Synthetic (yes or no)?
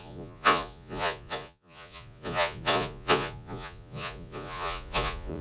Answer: yes